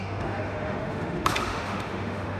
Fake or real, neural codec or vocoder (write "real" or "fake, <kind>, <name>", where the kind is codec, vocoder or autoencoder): fake, autoencoder, DAC-VAE